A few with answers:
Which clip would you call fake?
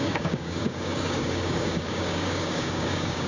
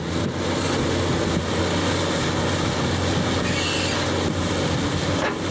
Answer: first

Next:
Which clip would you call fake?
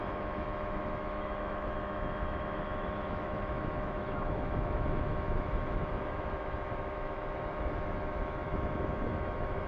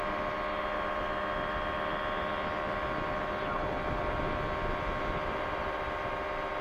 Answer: first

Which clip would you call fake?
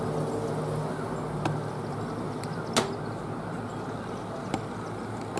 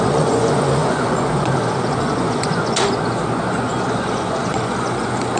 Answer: second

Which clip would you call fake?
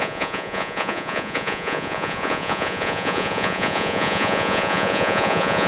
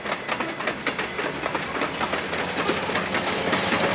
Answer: first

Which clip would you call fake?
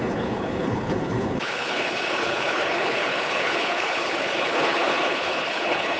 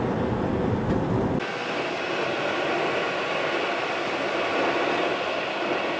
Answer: first